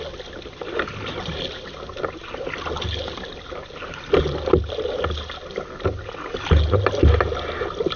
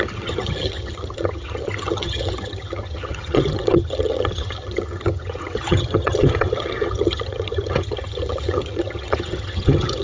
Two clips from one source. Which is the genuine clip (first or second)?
first